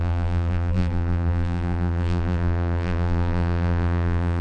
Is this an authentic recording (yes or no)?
no